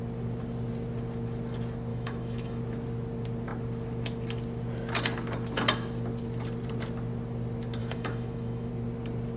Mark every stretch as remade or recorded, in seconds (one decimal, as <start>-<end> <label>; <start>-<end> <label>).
0.0-1.9 recorded; 1.9-2.6 remade; 2.6-7.8 recorded; 7.8-8.7 remade; 8.7-9.4 recorded